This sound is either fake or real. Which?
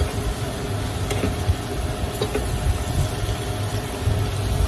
real